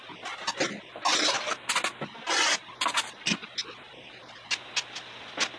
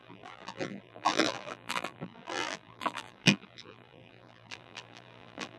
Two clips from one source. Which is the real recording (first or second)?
first